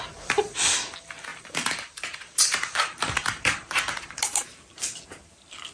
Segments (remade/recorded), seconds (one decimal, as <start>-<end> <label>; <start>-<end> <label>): 0.0-1.3 recorded; 1.3-4.7 remade; 4.7-5.7 recorded